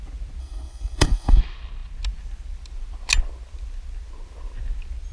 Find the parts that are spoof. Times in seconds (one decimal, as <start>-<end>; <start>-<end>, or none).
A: 0.4-1.4